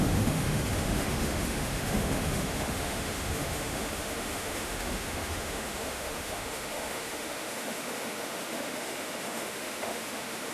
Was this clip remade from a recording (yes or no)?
yes